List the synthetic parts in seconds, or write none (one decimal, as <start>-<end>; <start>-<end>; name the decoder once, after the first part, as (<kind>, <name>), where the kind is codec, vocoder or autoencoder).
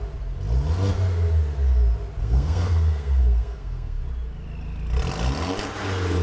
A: 2.2-4.0 (codec, SNAC)